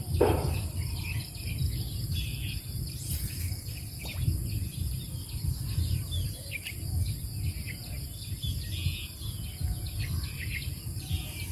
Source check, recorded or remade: recorded